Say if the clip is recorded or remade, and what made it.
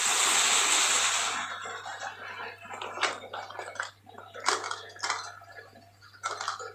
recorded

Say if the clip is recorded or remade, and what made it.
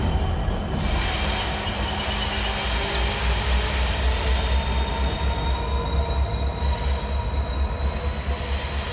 recorded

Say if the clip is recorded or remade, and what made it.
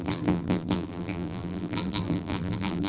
remade, vocoder, BigVGAN v2